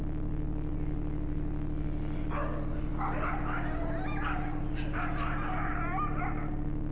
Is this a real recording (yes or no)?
yes